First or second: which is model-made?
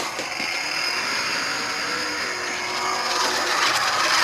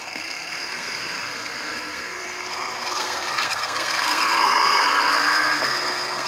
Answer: second